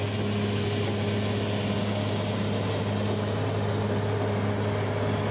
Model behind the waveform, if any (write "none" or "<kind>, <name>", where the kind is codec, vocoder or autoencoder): none